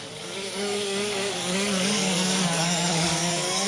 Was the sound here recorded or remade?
remade